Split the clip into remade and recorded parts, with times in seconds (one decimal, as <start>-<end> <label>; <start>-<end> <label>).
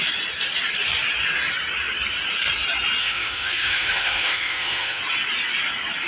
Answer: 0.0-3.0 recorded; 3.0-5.0 remade; 5.0-6.1 recorded